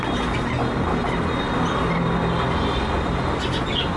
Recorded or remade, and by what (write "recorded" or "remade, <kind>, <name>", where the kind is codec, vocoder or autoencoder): recorded